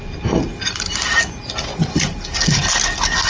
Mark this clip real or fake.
real